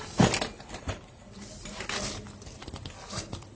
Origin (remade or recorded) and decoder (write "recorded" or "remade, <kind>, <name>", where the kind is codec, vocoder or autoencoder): recorded